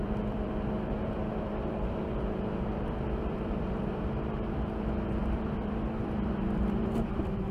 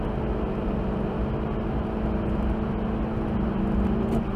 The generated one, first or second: first